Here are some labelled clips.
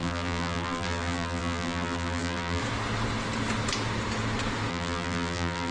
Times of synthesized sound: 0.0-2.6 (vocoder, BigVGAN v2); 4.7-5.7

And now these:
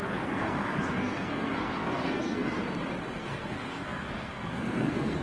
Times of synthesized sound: 0.0-2.6 (codec, SNAC); 3.2-5.2

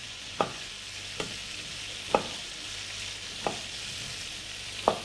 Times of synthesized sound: 0.0-0.7 (vocoder, Vocos)

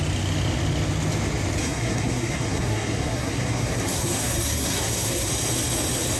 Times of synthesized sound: 1.6-5.3 (codec, SNAC)

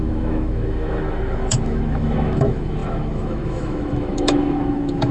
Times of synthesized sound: 0.0-5.1 (autoencoder, DAC-VAE)

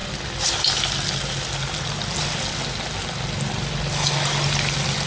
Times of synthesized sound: none

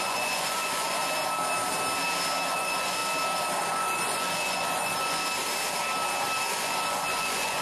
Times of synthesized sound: 0.0-1.0 (vocoder, Vocos); 2.5-3.0; 3.7-5.2; 6.5-7.6